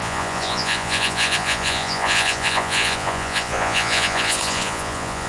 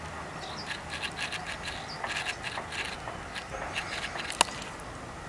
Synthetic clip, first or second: first